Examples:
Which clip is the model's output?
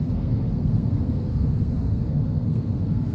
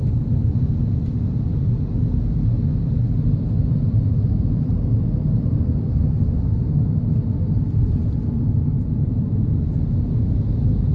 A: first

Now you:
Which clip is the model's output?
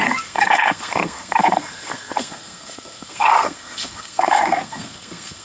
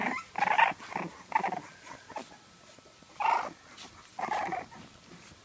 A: first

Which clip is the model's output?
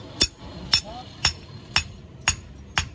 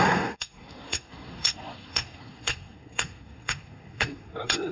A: second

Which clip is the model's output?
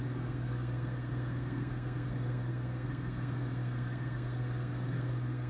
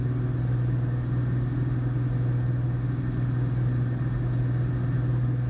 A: first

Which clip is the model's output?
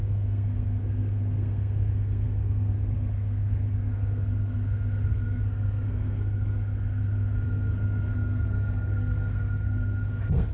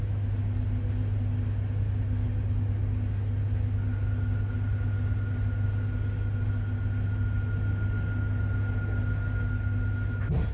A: first